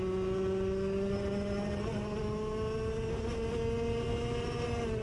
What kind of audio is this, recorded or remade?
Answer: recorded